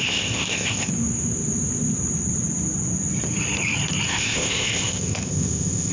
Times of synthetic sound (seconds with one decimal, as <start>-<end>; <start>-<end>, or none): 0.0-0.9; 4.1-5.9